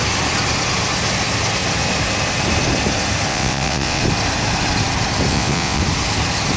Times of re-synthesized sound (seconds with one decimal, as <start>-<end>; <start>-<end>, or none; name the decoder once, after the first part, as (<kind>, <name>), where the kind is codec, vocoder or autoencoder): 3.3-4.0 (vocoder, WaveNeXt); 5.3-5.8